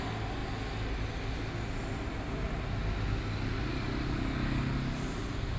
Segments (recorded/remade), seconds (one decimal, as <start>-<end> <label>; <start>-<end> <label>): 0.0-5.6 recorded